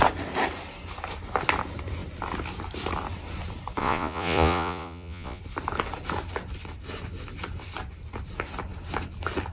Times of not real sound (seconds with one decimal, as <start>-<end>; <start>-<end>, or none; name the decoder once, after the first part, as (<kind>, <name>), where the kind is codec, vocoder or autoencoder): 3.8-5.4 (vocoder, Vocos)